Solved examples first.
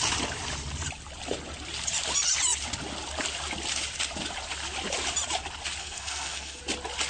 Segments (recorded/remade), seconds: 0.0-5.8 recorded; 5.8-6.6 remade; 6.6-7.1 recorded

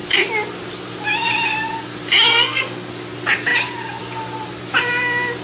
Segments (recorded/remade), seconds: 0.0-2.3 recorded; 2.3-2.9 remade; 2.9-5.4 recorded

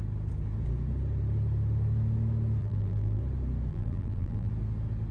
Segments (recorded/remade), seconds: 0.0-2.6 recorded; 2.6-3.2 remade; 3.2-3.7 recorded; 3.7-4.5 remade; 4.5-5.1 recorded

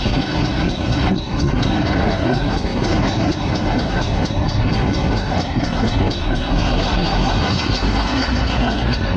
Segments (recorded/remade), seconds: 0.0-9.2 remade

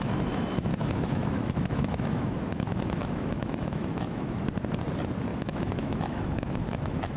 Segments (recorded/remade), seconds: 0.0-0.7 recorded; 0.7-4.3 remade; 4.3-5.3 recorded; 5.3-7.2 remade